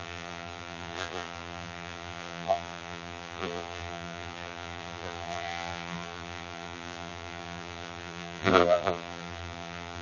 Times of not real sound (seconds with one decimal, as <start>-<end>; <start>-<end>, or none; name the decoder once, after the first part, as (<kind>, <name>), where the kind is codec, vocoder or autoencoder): 0.0-10.0 (vocoder, BigVGAN v2)